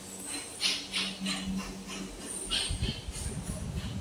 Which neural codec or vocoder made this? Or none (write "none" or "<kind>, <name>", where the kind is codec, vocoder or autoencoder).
none